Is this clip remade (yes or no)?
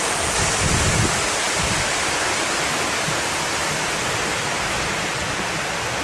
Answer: no